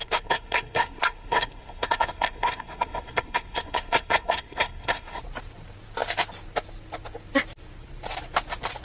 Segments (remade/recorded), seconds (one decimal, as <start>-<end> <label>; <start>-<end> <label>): 0.0-5.2 remade; 5.2-8.8 recorded

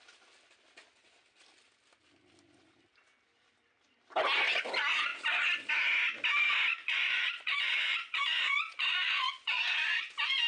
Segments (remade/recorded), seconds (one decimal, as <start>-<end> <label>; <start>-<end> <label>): 0.0-6.7 recorded; 6.7-10.0 remade; 10.0-10.5 recorded

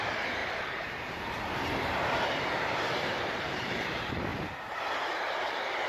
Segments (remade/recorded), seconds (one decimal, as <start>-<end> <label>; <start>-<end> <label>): 0.0-4.3 remade; 4.3-5.2 recorded; 5.2-5.9 remade

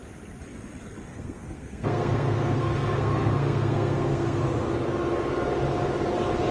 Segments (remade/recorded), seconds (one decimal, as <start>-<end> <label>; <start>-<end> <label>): 0.0-1.1 recorded; 1.1-4.4 remade; 4.4-6.5 recorded

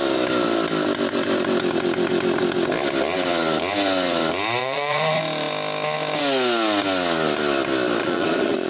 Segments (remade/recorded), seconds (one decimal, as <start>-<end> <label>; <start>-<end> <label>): 0.0-4.6 recorded; 4.6-5.2 remade; 5.2-8.0 recorded; 8.0-8.7 remade

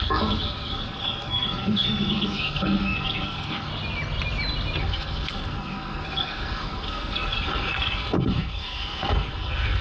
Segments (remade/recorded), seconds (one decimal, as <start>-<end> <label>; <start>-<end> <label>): 0.0-3.7 remade; 3.7-4.8 recorded; 4.8-9.8 remade

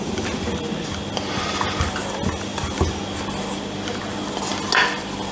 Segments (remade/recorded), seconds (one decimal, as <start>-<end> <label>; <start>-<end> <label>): 0.0-5.3 recorded

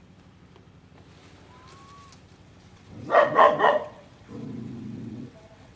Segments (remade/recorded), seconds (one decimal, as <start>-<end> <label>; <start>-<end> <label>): 0.0-2.4 recorded; 2.4-5.8 remade